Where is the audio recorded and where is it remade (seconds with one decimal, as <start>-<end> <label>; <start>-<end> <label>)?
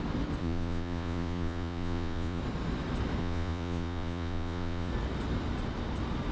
0.0-0.4 recorded; 0.4-2.4 remade; 2.4-3.2 recorded; 3.2-4.9 remade; 4.9-6.3 recorded